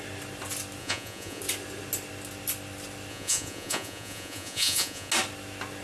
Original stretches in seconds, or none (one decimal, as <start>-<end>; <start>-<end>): 0.0-0.8; 1.4-3.1; 5.1-5.8